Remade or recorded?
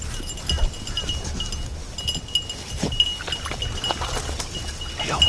recorded